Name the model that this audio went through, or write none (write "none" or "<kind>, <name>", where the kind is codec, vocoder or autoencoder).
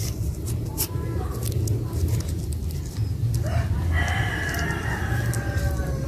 none